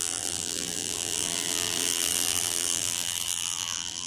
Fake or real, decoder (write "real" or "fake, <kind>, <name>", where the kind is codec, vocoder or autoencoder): fake, vocoder, BigVGAN v2